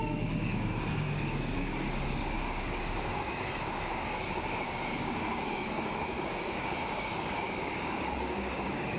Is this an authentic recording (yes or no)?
no